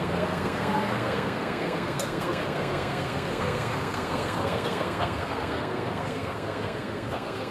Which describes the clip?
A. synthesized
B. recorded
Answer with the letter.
A